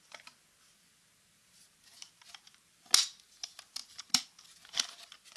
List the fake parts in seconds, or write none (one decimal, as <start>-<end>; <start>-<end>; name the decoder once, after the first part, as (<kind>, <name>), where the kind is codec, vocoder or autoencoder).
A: 1.9-2.8 (vocoder, BigVGAN v2); 3.8-4.4